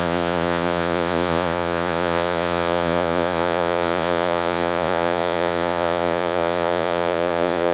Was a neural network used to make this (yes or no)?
yes